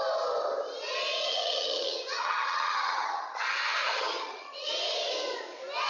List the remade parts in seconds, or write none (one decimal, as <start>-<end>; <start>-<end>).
1.2-4.7